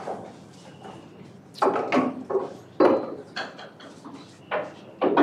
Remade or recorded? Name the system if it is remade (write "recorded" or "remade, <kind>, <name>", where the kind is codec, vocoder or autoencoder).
recorded